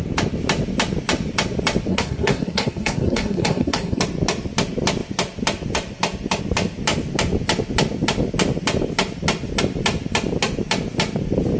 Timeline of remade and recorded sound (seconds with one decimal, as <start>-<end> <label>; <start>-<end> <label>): 0.0-1.9 recorded; 1.9-4.0 remade; 4.0-11.6 recorded